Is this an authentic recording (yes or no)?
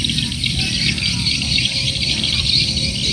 yes